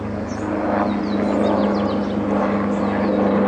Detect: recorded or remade recorded